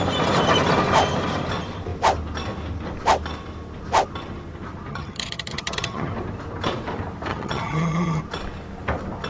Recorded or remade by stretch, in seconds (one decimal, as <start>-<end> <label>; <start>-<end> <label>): 0.0-4.9 recorded; 4.9-6.1 remade; 6.1-7.3 recorded; 7.3-8.2 remade; 8.2-9.3 recorded